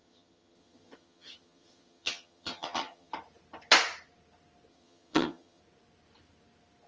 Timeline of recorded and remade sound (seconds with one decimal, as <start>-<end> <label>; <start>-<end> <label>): 0.0-3.1 remade; 3.1-4.7 recorded; 4.7-5.6 remade; 5.6-6.9 recorded